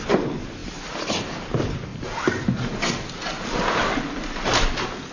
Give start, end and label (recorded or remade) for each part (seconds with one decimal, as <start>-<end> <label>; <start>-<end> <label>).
0.0-5.1 recorded